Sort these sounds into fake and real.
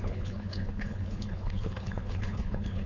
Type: fake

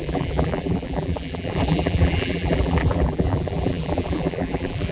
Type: fake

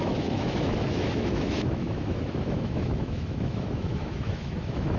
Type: fake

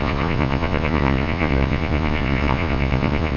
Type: fake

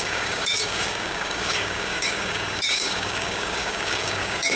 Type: fake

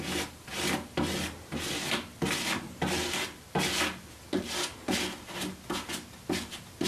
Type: real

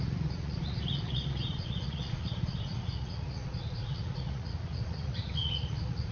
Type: fake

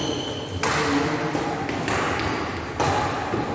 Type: real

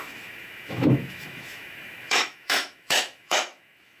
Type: fake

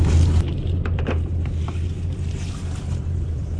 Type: fake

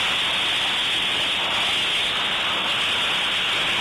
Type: real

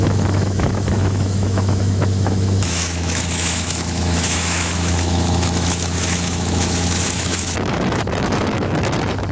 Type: fake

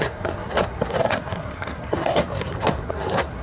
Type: fake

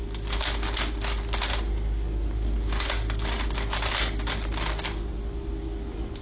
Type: real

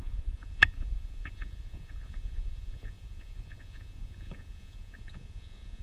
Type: fake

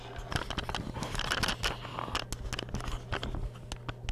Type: real